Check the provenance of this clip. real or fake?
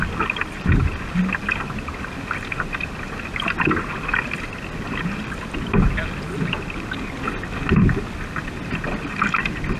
real